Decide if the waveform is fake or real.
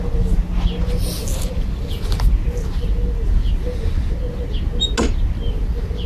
real